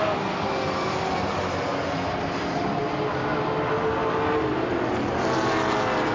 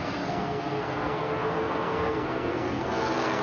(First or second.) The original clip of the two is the first